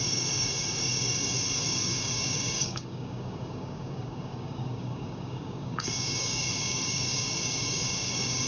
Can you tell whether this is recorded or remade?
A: remade